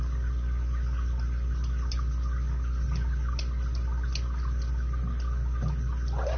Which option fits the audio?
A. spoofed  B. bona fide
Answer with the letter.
B